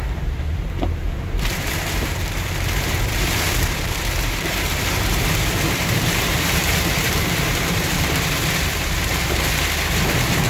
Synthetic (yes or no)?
yes